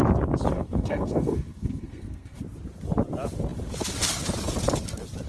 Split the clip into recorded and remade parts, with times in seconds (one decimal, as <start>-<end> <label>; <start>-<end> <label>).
0.0-0.5 recorded; 0.5-2.4 remade; 2.4-5.3 recorded